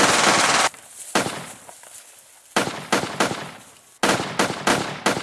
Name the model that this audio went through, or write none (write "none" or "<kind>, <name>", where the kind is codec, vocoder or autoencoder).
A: none